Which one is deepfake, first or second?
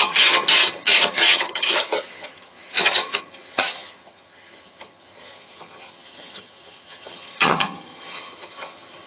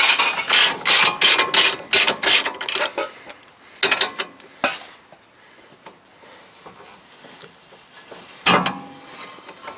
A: first